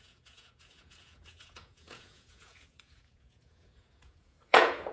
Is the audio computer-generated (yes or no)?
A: yes